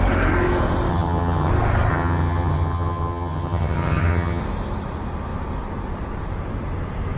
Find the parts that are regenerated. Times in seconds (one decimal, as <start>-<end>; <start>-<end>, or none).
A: 0.9-1.5; 1.9-4.4